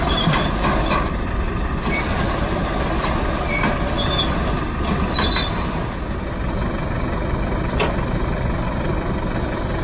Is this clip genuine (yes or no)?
yes